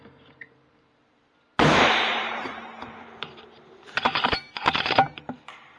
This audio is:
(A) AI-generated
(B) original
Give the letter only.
A